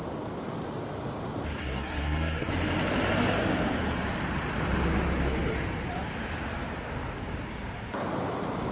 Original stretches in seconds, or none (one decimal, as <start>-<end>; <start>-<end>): 0.0-1.6; 2.5-8.7